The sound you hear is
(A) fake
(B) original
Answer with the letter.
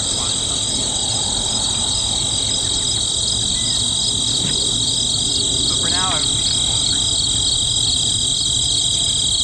B